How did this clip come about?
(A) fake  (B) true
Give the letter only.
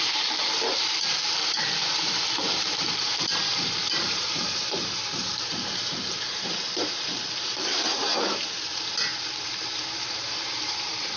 A